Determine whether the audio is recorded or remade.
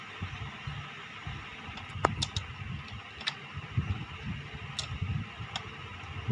recorded